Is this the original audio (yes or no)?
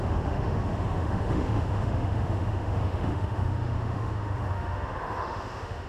no